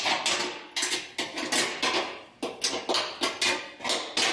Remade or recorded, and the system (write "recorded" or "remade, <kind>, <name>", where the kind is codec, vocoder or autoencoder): recorded